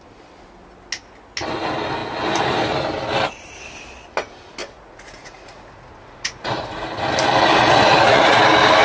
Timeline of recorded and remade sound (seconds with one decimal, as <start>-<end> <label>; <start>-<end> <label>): 0.0-4.6 recorded; 4.6-6.9 remade; 6.9-7.5 recorded; 7.5-8.4 remade; 8.4-8.8 recorded